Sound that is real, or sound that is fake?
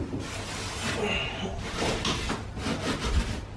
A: real